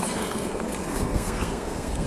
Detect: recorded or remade remade